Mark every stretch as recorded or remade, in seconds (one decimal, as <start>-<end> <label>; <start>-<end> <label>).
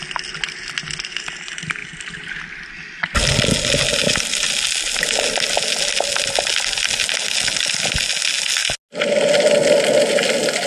0.0-10.7 recorded